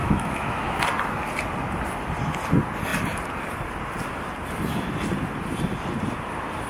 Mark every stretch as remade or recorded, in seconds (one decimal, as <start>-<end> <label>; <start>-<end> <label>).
0.0-0.8 remade; 0.8-6.7 recorded